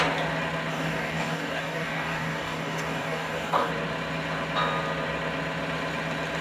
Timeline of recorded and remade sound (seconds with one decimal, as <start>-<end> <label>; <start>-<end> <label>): 0.0-0.7 recorded; 0.7-3.7 remade; 3.7-6.4 recorded